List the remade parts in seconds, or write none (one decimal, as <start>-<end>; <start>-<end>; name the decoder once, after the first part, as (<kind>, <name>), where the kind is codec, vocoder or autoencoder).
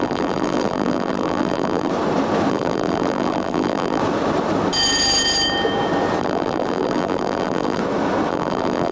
0.0-1.9 (vocoder, BigVGAN v2); 2.5-4.0; 6.2-7.8; 8.3-8.9